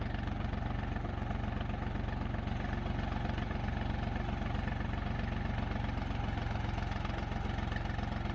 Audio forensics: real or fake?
real